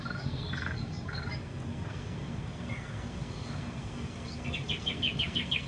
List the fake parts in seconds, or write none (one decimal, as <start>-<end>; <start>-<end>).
0.0-5.7

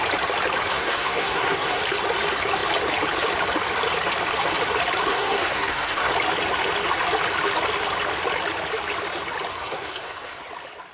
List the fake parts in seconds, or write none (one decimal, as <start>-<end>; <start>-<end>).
0.7-1.8; 5.1-6.1; 9.5-10.4